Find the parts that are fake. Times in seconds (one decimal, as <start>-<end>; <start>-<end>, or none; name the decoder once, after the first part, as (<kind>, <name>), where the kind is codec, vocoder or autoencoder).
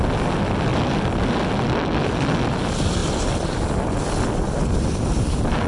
none